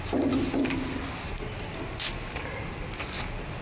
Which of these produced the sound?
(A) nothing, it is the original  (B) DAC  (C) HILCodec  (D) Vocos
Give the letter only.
A